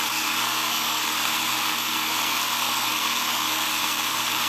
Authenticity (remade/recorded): remade